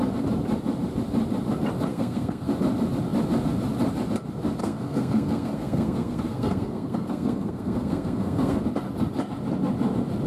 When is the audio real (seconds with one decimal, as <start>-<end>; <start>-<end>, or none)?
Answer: 0.0-1.9; 2.5-4.6; 8.6-10.3